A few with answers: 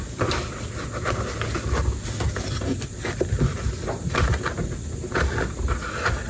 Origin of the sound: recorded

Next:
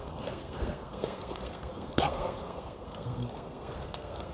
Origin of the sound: remade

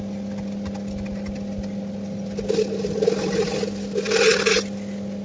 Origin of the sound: recorded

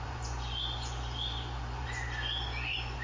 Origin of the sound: remade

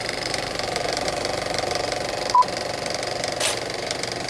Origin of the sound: remade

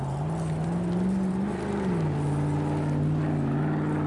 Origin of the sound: recorded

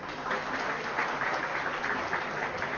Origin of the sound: recorded